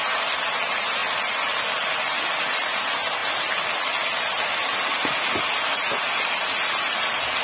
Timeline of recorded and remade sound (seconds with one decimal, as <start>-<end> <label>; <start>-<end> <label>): 0.0-7.4 recorded